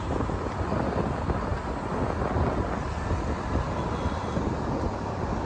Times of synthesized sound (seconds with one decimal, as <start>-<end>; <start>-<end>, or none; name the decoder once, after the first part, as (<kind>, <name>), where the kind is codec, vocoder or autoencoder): none